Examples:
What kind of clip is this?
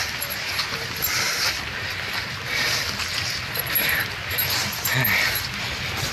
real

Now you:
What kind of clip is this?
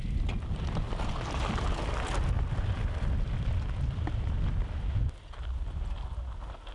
real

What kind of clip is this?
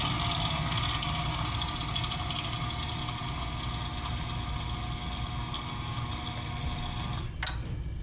real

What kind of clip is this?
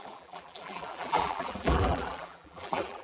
fake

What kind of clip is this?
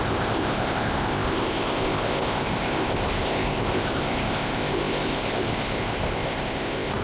fake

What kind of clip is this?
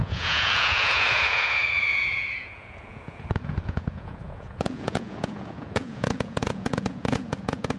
fake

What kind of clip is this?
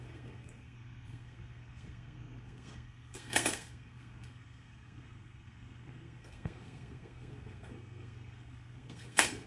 fake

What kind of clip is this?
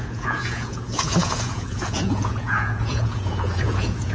fake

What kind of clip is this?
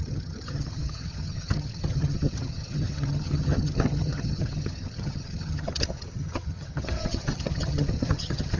fake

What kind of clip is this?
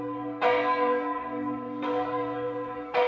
fake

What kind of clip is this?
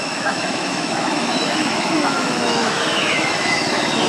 fake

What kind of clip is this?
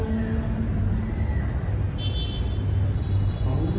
real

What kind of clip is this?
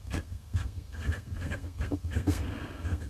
fake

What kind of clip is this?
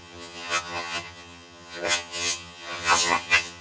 fake